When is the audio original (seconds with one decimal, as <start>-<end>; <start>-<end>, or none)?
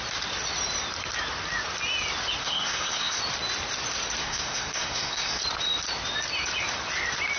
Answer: 0.0-2.4; 3.2-4.2; 5.4-7.4